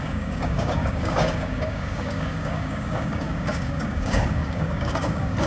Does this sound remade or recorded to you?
remade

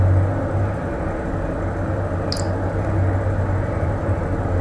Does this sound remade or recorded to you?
recorded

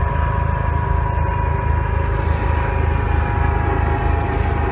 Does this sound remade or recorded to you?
recorded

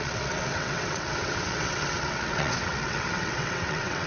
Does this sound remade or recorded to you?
remade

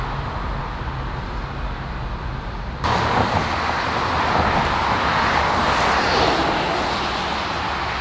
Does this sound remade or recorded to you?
recorded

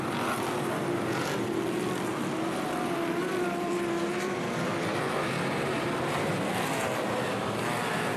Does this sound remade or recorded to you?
remade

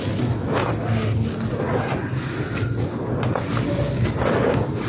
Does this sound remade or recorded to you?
recorded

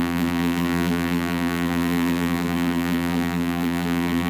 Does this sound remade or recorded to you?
remade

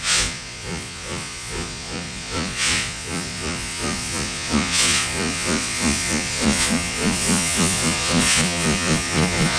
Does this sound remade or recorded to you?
remade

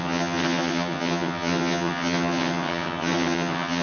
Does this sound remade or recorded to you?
remade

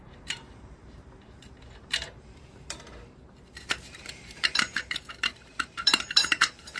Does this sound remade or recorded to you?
remade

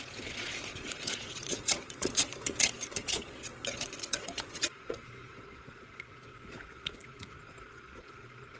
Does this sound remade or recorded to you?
remade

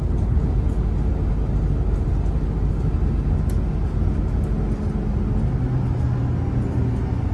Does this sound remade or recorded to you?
recorded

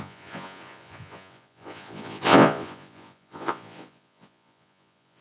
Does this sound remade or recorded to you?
remade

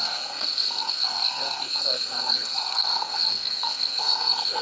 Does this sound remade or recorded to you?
remade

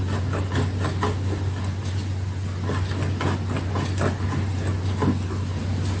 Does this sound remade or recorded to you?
recorded